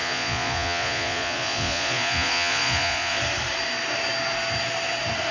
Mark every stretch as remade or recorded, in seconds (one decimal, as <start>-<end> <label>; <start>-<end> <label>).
0.0-3.2 remade; 3.2-5.3 recorded